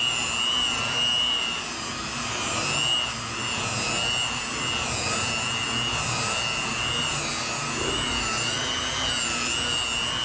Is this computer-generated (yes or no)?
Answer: no